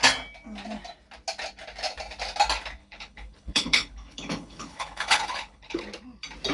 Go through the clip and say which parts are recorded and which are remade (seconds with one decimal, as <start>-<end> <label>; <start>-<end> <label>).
0.0-2.8 recorded; 2.8-5.8 remade; 5.8-6.5 recorded